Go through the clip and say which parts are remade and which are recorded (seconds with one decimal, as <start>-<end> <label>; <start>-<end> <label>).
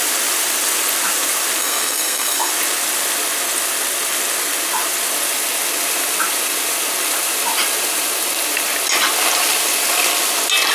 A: 0.0-1.6 recorded; 1.6-2.5 remade; 2.5-10.7 recorded